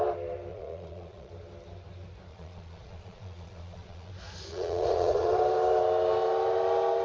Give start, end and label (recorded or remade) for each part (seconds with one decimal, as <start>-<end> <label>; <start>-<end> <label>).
0.0-0.5 recorded; 0.5-1.3 remade; 1.3-2.3 recorded; 2.3-4.1 remade; 4.1-4.5 recorded; 4.5-5.4 remade; 5.4-7.0 recorded